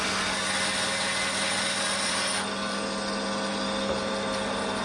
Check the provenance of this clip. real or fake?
real